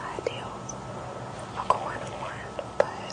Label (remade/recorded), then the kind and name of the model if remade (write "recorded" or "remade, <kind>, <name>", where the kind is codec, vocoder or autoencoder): recorded